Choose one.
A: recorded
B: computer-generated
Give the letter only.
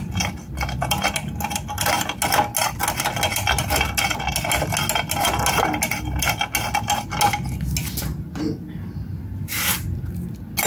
A